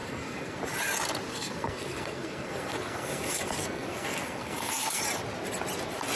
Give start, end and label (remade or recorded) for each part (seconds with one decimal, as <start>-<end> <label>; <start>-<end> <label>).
0.0-0.6 remade; 0.6-1.3 recorded; 1.3-5.0 remade; 5.0-6.2 recorded